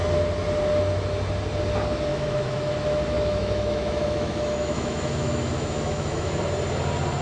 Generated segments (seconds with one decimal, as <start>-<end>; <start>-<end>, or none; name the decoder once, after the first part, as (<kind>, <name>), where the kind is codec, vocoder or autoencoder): 2.1-6.4 (autoencoder, DAC-VAE)